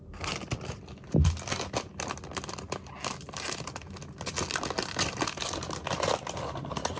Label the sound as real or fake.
real